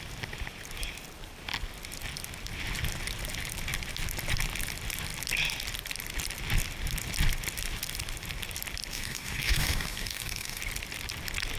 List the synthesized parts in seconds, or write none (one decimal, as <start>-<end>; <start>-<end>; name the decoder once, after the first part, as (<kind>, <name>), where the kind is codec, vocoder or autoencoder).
8.9-10.6 (codec, DAC)